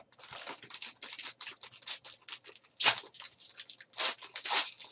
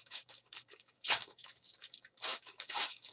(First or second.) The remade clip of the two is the second